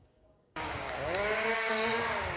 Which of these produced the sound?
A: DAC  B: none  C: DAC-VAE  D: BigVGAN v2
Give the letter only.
A